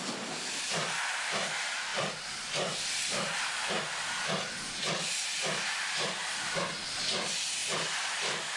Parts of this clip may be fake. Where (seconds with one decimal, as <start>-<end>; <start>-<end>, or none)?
1.9-2.9